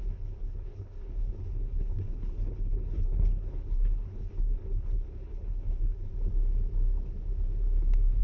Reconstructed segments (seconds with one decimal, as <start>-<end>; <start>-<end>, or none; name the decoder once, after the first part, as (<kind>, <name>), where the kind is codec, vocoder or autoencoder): 0.0-6.1 (codec, HILCodec)